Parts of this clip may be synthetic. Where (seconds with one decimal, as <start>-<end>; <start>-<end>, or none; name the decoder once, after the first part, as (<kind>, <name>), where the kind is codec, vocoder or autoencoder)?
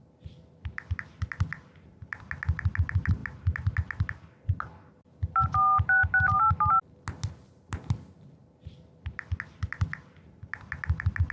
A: none